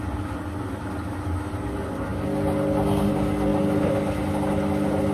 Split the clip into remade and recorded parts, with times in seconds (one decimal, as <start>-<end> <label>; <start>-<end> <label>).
0.0-5.1 recorded